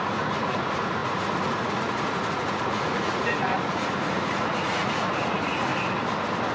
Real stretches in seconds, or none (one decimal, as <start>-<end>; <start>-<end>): 5.7-6.5